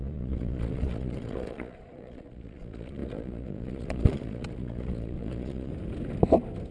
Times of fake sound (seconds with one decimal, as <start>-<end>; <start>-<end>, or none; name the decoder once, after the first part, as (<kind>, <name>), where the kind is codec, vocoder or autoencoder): 0.0-5.7 (vocoder, Vocos)